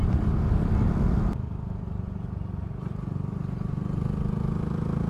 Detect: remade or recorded recorded